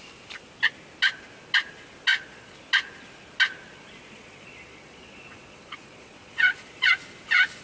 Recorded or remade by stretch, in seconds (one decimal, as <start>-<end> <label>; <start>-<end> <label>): 0.0-2.1 recorded; 2.1-2.6 remade; 2.6-3.7 recorded; 3.7-6.9 remade; 6.9-7.6 recorded